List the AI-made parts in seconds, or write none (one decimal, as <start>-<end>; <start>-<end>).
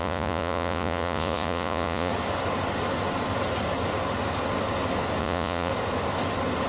0.0-2.1; 5.2-5.7